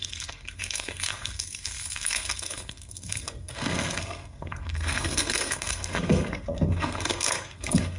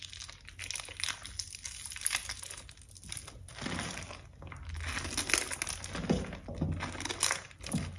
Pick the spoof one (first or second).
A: first